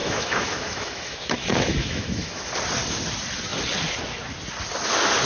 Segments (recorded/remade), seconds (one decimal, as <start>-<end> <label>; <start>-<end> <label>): 0.0-2.5 remade; 2.5-5.3 recorded